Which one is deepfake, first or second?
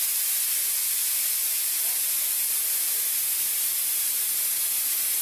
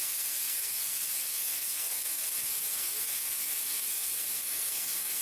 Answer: second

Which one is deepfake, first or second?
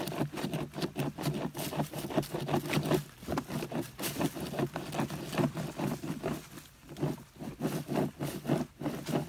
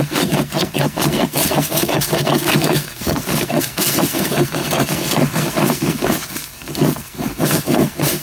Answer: second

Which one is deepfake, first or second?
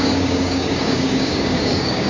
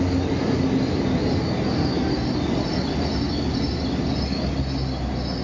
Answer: first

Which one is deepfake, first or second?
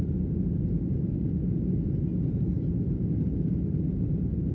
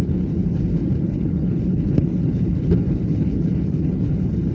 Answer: second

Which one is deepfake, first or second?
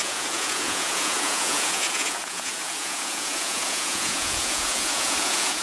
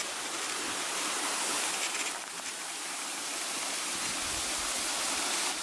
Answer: first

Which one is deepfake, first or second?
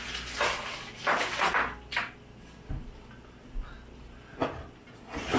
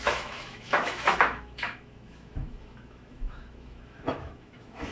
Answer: second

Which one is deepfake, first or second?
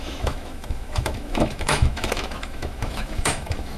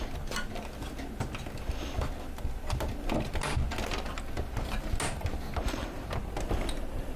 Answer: first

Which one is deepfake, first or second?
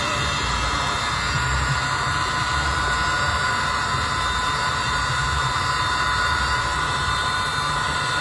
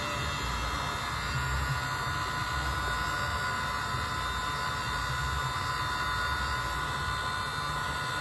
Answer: first